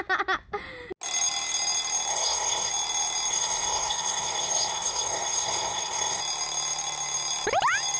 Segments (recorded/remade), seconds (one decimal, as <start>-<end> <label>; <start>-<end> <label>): 0.0-2.1 recorded; 2.1-2.7 remade; 2.7-3.3 recorded; 3.3-6.2 remade; 6.2-8.0 recorded